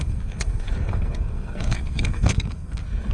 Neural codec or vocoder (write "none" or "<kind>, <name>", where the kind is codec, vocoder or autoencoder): codec, SNAC